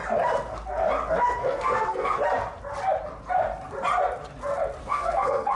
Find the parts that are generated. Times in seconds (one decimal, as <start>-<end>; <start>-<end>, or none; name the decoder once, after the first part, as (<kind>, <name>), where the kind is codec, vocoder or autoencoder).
1.4-2.2 (codec, SNAC); 4.8-5.5